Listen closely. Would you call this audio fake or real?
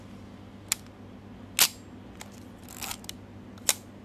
real